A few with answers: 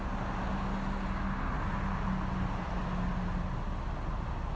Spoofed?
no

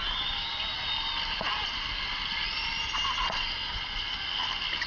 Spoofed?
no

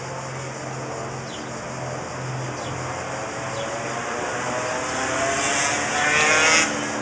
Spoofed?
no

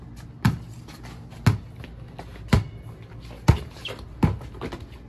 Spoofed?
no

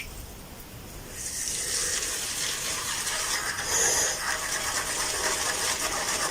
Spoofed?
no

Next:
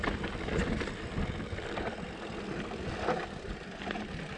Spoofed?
yes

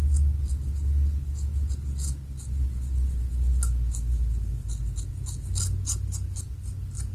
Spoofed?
no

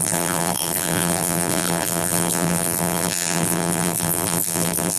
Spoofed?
yes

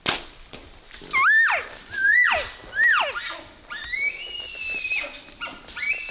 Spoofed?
no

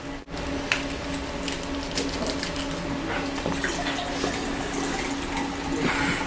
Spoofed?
no